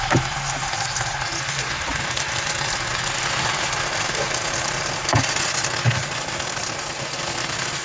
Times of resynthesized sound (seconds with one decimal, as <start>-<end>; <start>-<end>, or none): none